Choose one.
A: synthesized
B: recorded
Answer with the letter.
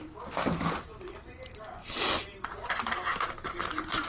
A